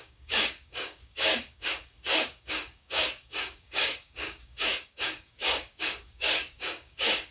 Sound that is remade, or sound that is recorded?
remade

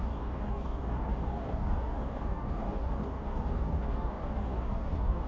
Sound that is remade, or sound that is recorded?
remade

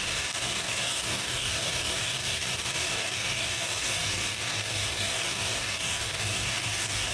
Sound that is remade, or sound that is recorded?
remade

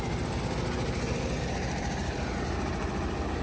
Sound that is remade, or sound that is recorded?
recorded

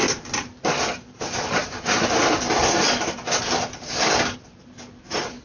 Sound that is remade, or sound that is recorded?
recorded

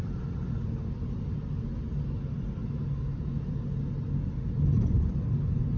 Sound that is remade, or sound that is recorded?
recorded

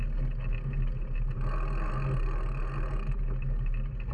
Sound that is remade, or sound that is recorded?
recorded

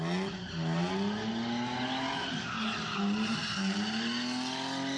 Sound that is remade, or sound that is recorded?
recorded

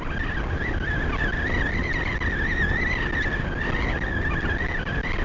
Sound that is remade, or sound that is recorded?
recorded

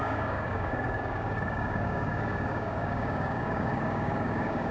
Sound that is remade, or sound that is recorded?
remade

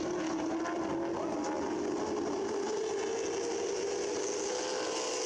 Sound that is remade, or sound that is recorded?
recorded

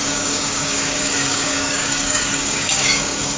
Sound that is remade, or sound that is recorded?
remade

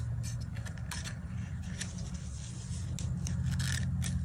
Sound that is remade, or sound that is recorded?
recorded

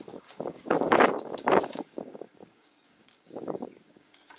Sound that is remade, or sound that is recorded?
remade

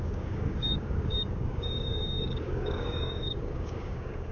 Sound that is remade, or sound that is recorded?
remade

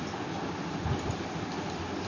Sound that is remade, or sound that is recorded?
recorded